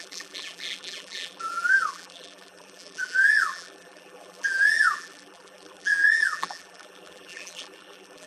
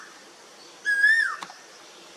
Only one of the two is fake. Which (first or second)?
first